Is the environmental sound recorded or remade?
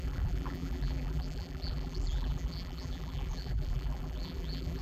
remade